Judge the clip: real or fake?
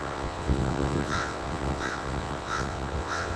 fake